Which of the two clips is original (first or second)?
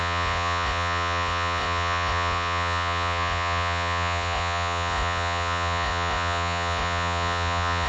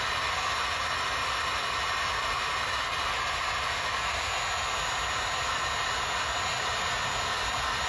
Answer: second